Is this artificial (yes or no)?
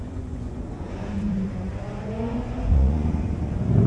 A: yes